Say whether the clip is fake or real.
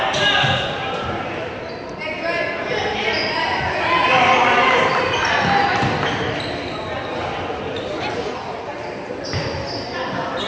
real